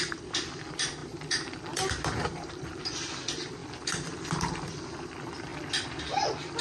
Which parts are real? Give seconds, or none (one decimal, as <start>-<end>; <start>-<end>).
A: 5.5-6.1